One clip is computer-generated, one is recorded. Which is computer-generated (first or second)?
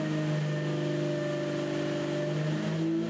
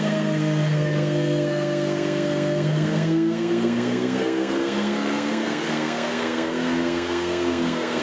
second